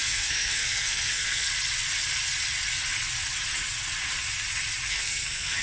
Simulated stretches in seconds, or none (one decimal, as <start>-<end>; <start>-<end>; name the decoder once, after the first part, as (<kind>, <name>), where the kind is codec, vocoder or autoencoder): 0.0-1.5 (codec, SNAC); 4.9-5.6